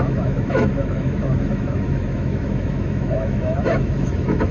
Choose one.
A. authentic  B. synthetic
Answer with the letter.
B